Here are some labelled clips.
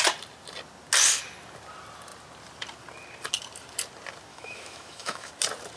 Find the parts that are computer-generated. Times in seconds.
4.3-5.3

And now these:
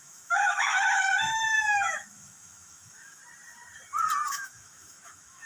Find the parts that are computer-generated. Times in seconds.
0.0-3.2; 4.3-5.5

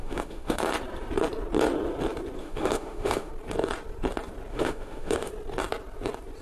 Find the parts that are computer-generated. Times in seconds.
0.0-0.6; 2.4-3.3; 4.5-5.3